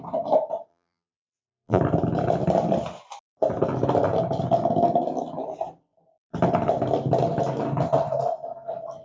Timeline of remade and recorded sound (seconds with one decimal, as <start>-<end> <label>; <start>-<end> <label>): 0.0-0.7 recorded; 0.7-1.8 remade; 1.8-9.0 recorded